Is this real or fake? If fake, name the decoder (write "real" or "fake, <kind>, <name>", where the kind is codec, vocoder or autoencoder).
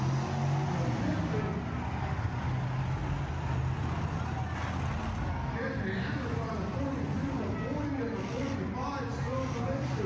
real